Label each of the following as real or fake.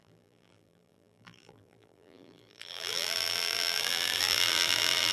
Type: fake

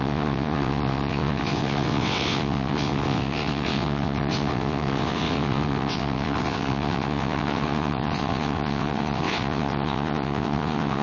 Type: fake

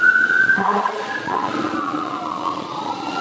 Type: fake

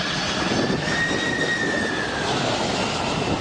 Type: real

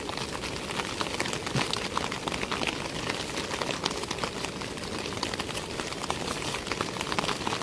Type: real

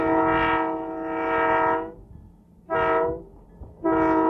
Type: real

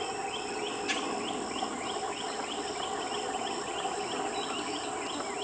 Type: real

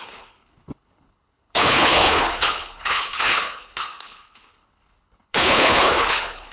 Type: fake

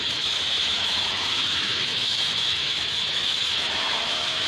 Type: fake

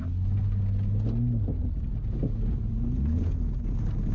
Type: real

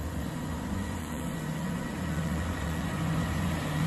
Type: fake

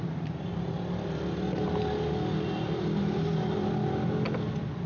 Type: real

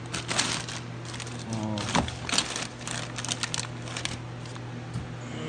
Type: real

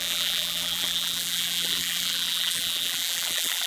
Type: fake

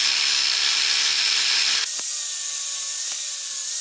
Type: real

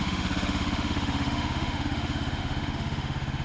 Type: fake